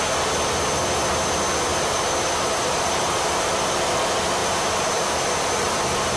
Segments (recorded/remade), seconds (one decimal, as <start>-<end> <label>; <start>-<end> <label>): 0.0-1.7 recorded; 1.7-3.8 remade; 3.8-4.4 recorded; 4.4-5.8 remade; 5.8-6.2 recorded